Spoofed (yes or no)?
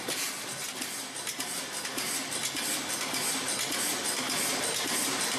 no